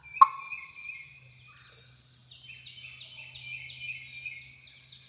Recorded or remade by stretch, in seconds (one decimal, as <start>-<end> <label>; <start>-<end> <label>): 0.0-5.1 recorded